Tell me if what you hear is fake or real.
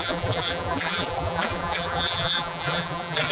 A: fake